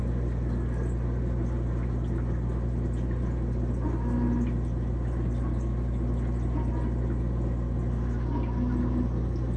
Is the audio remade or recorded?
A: recorded